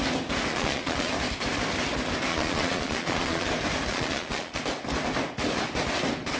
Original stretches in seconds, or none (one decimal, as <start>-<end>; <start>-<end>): 0.0-0.5; 1.1-2.3; 3.5-3.9; 4.6-6.4